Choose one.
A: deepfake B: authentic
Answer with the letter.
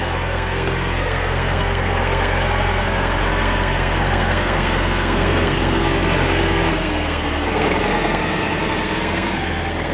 A